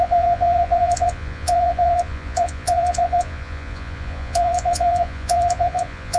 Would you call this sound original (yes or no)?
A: no